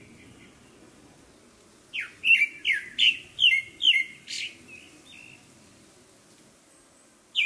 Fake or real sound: real